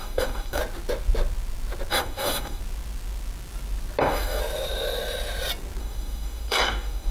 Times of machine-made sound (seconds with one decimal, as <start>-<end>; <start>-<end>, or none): 0.0-0.6; 1.9-2.6; 4.0-4.4; 5.8-7.1